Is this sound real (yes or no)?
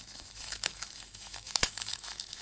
no